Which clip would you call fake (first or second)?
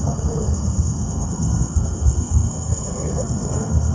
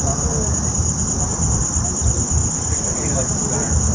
first